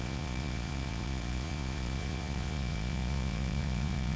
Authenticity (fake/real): fake